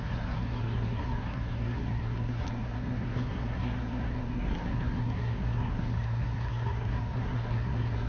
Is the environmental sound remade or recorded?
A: remade